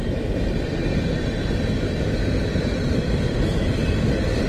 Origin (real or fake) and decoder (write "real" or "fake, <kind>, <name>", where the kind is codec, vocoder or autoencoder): fake, vocoder, BigVGAN v2